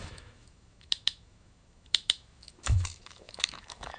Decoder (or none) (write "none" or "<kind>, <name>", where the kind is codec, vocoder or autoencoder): autoencoder, DAC-VAE